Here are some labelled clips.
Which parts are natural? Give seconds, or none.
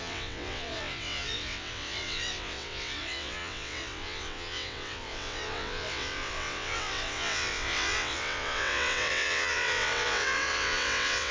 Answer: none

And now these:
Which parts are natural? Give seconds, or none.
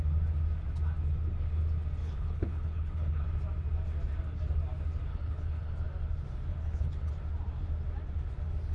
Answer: 0.0-2.0; 3.2-5.1; 5.7-6.5; 7.1-8.7